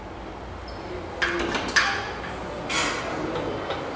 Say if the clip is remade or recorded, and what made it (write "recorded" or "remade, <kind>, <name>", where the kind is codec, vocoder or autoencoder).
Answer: recorded